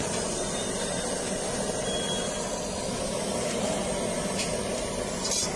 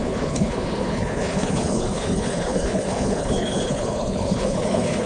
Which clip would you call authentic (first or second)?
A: first